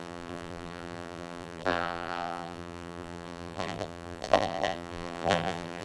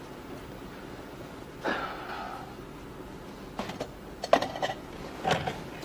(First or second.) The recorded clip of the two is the second